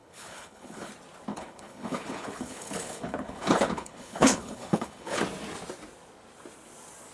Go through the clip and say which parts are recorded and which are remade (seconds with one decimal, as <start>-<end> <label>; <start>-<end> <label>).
0.0-0.9 remade; 0.9-1.3 recorded; 1.3-5.2 remade; 5.2-7.1 recorded